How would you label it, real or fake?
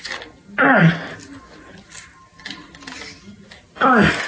real